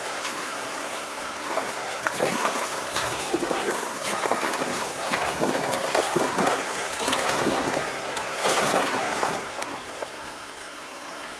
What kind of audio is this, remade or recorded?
remade